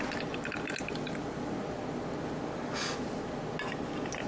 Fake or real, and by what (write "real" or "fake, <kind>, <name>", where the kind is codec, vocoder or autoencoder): real